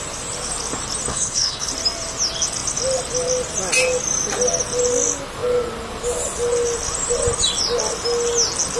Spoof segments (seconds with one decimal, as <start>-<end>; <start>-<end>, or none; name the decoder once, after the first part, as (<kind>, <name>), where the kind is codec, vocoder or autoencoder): 1.1-1.7 (codec, HILCodec)